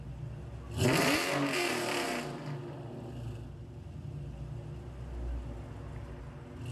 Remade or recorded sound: recorded